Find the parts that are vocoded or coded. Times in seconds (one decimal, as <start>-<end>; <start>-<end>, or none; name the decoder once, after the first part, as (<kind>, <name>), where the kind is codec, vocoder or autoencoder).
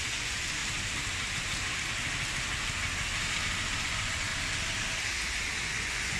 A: 0.0-0.6 (vocoder, Vocos); 3.8-4.3; 5.6-6.2